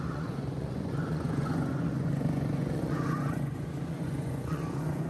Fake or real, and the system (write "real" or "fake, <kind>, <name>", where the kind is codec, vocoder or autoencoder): fake, vocoder, Vocos